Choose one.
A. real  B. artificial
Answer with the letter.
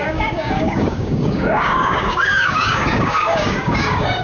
B